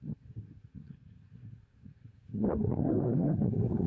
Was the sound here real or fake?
fake